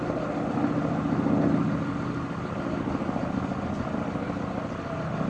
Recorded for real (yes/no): yes